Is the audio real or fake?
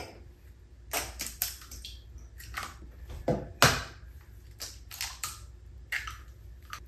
real